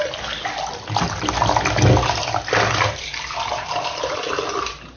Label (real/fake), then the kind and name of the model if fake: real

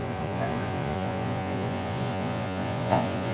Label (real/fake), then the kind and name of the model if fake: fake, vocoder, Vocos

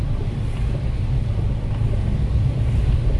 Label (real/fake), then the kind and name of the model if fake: real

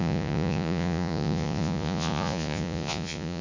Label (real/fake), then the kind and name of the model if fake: fake, vocoder, Vocos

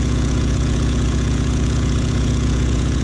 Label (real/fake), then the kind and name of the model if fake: fake, vocoder, Vocos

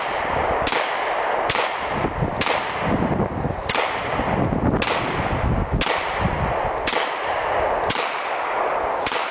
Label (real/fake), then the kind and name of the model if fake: real